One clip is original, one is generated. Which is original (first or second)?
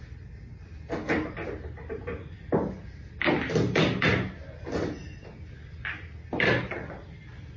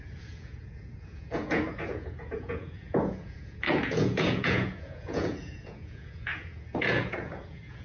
first